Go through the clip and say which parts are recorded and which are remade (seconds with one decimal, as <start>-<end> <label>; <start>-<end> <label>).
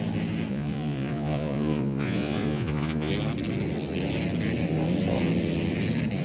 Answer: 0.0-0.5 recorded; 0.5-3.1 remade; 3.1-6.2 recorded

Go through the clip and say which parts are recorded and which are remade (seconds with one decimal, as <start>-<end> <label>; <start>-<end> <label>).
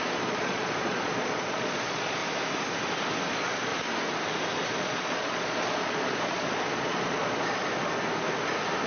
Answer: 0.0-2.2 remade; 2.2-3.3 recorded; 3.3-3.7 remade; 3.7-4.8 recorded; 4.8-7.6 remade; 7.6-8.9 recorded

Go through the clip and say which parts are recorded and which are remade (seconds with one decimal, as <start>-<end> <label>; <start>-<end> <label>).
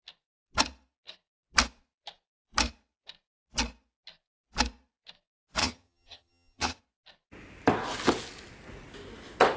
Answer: 0.0-5.6 recorded; 5.6-6.8 remade; 6.8-9.6 recorded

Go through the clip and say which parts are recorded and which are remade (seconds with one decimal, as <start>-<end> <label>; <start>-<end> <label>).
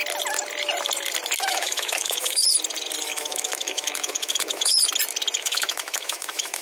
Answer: 0.0-1.5 recorded; 1.5-2.4 remade; 2.4-3.0 recorded; 3.0-4.7 remade; 4.7-5.4 recorded; 5.4-6.6 remade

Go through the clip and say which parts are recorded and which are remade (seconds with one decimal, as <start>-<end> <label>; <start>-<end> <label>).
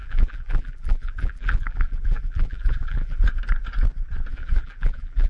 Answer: 0.0-3.2 remade; 3.2-4.3 recorded; 4.3-5.3 remade